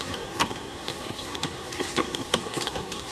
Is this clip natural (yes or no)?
no